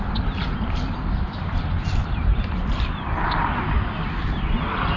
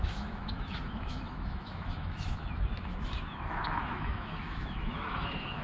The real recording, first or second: first